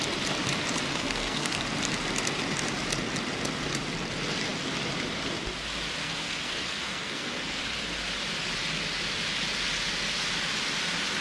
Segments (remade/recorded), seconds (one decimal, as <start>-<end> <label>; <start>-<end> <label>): 0.0-0.9 recorded; 0.9-1.6 remade; 1.6-6.0 recorded; 6.0-7.6 remade; 7.6-11.2 recorded